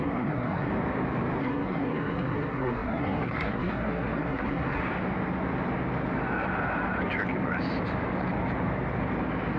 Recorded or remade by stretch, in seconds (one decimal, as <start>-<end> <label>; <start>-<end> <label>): 0.0-0.7 remade; 0.7-1.4 recorded; 1.4-4.8 remade; 4.8-9.6 recorded